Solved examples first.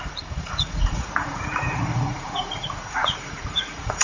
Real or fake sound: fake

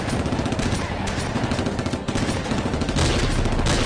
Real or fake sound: real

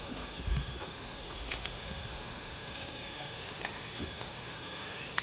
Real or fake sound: fake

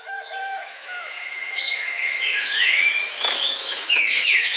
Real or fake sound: fake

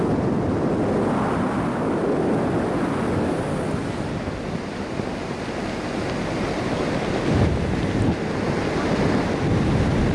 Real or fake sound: real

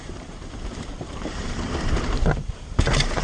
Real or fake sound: fake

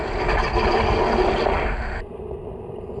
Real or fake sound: real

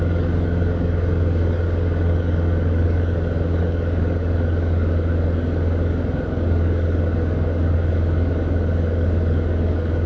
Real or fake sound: fake